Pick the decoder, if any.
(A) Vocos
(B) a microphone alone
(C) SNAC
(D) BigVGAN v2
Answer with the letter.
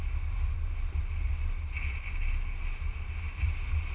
B